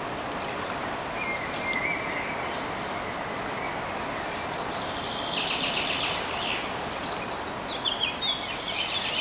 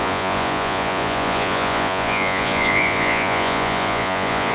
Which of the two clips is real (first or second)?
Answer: first